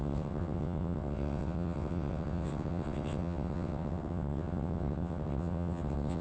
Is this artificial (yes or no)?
yes